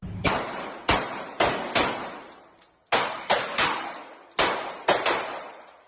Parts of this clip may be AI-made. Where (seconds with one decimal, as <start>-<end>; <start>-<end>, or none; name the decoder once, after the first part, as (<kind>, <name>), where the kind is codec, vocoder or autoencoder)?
none